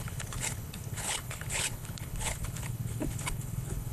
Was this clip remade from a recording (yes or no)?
yes